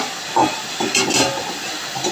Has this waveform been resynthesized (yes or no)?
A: no